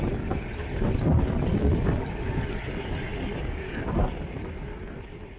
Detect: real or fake real